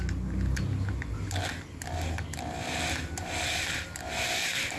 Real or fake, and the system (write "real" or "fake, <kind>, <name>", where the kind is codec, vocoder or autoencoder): real